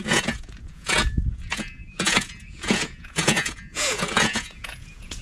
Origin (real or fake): fake